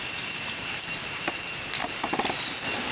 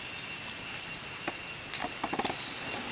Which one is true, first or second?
second